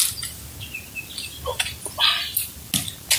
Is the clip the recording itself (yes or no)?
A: yes